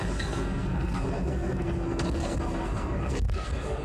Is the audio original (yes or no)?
no